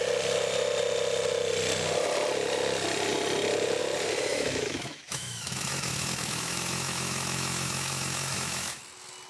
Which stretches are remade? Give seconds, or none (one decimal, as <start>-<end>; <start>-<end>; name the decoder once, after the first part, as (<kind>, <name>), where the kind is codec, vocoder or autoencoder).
4.3-8.8 (autoencoder, DAC-VAE)